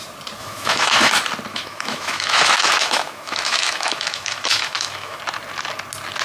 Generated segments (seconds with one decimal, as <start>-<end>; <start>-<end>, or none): 0.4-1.1; 1.5-5.2